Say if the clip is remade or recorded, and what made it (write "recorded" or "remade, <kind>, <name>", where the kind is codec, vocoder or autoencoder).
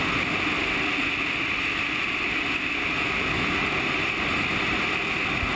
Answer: recorded